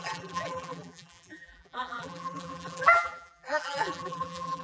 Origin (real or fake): fake